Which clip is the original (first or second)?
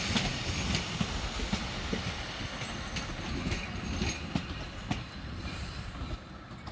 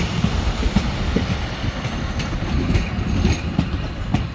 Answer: first